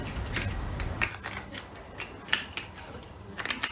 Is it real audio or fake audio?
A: real